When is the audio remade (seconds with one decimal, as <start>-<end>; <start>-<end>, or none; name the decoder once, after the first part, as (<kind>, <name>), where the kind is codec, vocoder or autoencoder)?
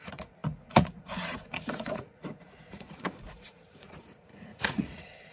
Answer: 0.0-5.3 (vocoder, Vocos)